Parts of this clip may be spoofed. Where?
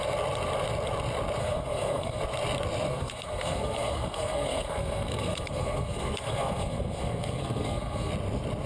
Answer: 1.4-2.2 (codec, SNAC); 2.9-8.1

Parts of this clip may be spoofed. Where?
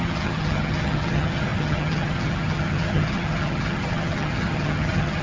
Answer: 0.0-5.2 (vocoder, HiFi-GAN)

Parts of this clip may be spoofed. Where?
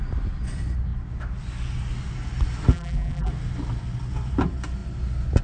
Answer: 2.7-3.3 (vocoder, BigVGAN v2)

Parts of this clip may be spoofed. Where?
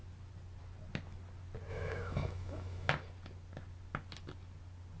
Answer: 1.7-2.9 (autoencoder, DAC-VAE)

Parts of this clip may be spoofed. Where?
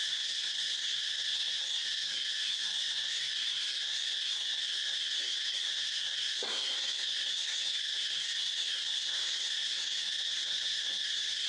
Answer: 0.0-11.5 (codec, SNAC)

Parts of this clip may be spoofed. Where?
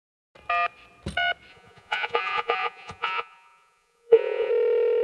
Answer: 1.5-4.5 (vocoder, Vocos)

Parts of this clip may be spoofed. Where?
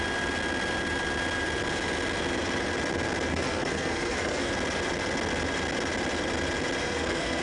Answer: 3.3-4.5 (codec, SNAC); 6.8-7.4